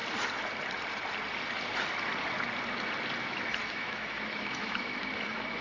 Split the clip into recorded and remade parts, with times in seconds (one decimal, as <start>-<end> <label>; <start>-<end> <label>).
0.0-3.2 recorded; 3.2-5.6 remade